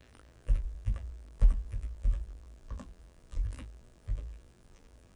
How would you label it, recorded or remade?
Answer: remade